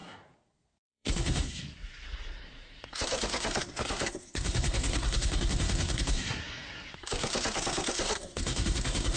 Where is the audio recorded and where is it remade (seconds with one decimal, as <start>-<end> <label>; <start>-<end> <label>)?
0.0-9.2 remade